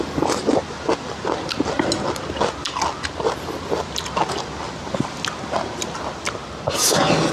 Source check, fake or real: real